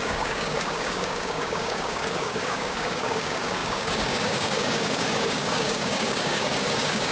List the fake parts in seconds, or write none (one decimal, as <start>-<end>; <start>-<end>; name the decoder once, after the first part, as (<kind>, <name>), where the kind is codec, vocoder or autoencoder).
0.0-7.1 (codec, DAC)